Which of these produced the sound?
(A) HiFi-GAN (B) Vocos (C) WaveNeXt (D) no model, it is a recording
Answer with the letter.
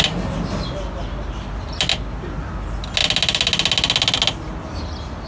D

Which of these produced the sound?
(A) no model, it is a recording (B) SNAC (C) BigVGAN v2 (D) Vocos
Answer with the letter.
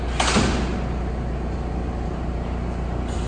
A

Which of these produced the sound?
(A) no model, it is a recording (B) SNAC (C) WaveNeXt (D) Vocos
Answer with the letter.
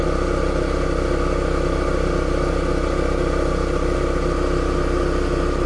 A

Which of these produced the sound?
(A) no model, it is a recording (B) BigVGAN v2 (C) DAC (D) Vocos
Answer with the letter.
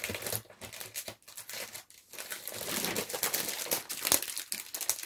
A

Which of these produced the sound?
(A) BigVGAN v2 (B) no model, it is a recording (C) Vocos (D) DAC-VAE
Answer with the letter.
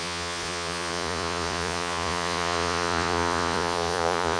C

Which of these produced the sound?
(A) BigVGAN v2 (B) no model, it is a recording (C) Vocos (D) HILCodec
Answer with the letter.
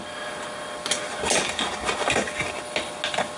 B